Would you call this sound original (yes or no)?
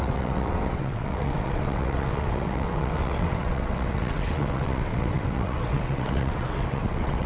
no